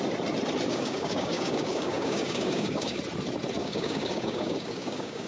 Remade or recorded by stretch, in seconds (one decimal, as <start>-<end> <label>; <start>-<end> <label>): 0.0-0.7 recorded; 0.7-3.0 remade; 3.0-3.6 recorded; 3.6-5.3 remade